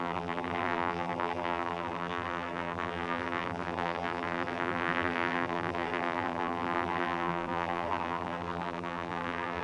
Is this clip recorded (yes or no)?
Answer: no